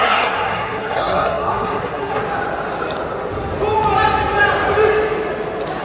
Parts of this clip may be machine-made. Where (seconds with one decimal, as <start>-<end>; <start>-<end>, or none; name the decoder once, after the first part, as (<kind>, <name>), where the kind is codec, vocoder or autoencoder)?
0.0-2.2 (codec, SNAC)